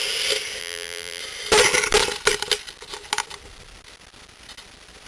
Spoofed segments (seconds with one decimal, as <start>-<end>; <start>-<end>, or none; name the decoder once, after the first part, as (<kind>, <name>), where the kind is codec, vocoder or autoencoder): 0.6-1.2 (vocoder, BigVGAN v2)